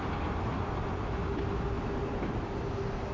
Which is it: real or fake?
real